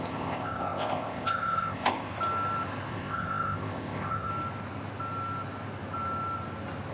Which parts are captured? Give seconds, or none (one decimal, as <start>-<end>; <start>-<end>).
2.1-2.9; 4.3-6.9